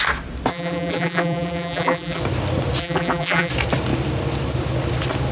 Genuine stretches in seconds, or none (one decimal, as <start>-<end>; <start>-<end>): 0.0-0.5; 2.2-2.8; 3.5-5.3